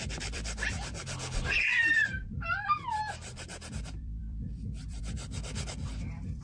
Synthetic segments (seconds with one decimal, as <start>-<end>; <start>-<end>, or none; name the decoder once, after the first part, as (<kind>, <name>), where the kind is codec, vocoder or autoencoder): 0.0-6.4 (vocoder, BigVGAN v2)